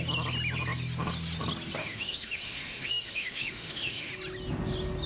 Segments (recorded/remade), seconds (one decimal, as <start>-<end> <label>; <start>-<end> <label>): 0.0-1.8 recorded; 1.8-4.1 remade; 4.1-5.1 recorded